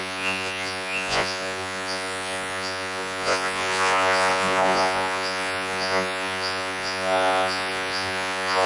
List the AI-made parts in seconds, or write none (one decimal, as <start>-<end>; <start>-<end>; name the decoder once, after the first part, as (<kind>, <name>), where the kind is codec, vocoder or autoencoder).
0.0-8.7 (vocoder, Vocos)